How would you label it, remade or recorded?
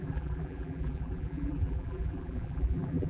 remade